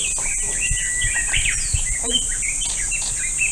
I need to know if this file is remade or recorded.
recorded